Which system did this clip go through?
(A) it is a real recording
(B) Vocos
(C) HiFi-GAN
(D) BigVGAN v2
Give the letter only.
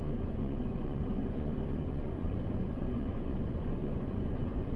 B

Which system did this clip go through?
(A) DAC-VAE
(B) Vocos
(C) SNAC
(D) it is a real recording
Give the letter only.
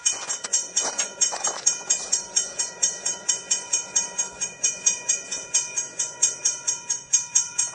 B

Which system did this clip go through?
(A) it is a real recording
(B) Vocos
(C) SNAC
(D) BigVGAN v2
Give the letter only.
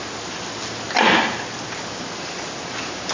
A